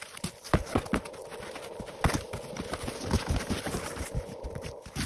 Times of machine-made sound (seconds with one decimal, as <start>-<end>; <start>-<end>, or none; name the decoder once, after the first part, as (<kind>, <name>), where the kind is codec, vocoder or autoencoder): none